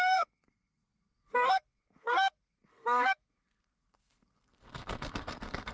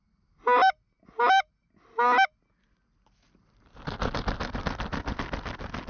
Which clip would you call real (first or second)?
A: second